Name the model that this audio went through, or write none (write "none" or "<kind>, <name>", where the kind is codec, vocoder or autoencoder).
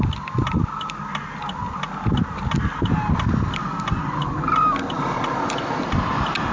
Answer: none